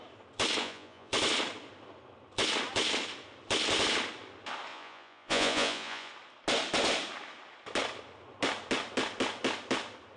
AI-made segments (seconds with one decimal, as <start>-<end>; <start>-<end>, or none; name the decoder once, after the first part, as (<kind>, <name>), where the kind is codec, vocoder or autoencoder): 0.6-1.1 (vocoder, Vocos); 4.7-6.1